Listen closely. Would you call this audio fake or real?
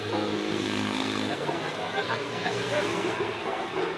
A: fake